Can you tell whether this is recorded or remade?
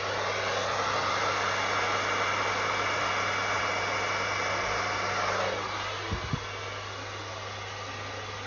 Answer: recorded